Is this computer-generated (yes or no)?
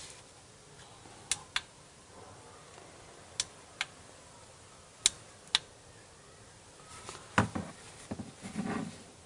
no